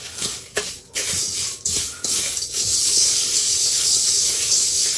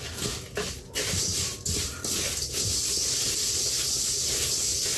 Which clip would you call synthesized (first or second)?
first